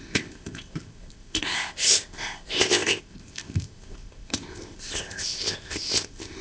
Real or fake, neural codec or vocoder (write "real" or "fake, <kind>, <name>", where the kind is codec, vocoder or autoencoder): fake, codec, ZipCodec